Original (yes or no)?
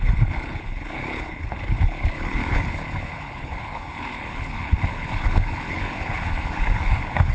no